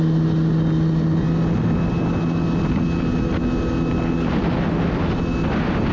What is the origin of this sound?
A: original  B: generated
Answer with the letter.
A